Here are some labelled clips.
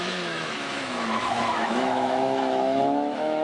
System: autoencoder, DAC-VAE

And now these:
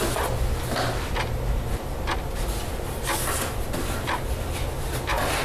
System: none